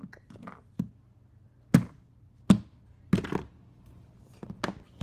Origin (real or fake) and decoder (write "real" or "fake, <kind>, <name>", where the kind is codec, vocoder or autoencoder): real